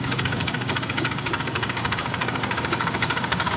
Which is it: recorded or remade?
remade